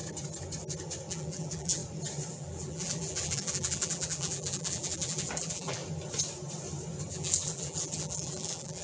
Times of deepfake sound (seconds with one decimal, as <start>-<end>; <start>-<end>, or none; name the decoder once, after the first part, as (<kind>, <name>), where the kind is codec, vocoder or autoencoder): 1.1-1.8 (vocoder, BigVGAN v2); 2.3-5.8; 7.1-8.8